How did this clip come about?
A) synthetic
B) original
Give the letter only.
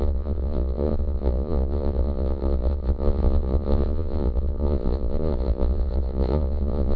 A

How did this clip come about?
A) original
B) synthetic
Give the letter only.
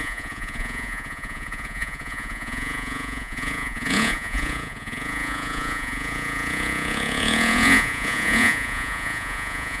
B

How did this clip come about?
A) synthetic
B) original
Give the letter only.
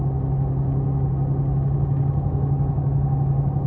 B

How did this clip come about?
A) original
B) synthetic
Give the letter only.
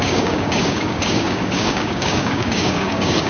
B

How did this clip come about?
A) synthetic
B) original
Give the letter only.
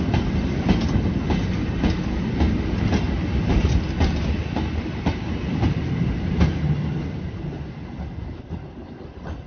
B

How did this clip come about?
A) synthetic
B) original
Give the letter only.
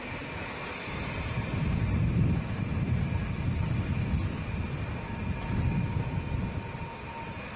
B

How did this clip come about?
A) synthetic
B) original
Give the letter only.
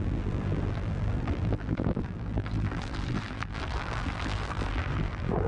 A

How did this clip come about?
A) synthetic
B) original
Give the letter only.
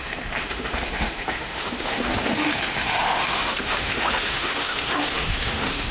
A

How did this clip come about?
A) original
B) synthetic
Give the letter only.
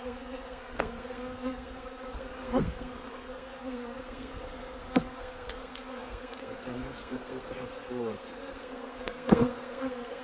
B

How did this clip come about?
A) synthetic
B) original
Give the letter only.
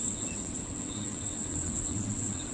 A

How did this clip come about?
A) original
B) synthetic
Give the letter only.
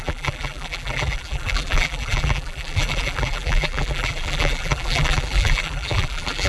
B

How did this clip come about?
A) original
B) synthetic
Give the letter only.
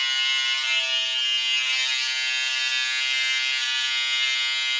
A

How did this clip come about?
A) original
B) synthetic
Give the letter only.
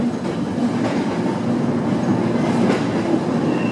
A